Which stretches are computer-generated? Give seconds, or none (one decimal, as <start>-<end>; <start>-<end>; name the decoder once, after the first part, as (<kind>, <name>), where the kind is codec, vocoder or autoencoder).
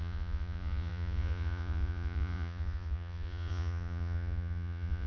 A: 0.0-5.1 (vocoder, Vocos)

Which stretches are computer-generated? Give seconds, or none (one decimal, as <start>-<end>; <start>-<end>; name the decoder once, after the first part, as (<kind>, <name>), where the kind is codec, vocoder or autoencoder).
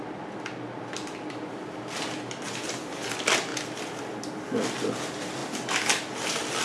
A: none